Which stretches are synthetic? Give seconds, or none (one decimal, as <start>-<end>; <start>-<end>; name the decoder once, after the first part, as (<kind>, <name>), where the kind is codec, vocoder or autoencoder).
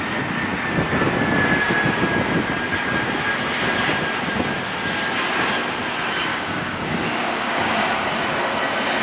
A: 6.3-8.0 (codec, DAC)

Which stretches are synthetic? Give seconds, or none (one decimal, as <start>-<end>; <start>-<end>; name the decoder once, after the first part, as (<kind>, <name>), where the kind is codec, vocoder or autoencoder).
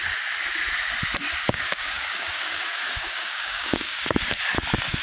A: 1.4-4.4 (codec, DAC)